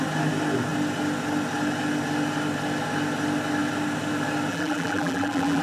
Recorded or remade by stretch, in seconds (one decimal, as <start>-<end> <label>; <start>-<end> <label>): 0.0-4.5 recorded; 4.5-5.6 remade